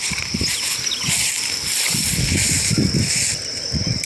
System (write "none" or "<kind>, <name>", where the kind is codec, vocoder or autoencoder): none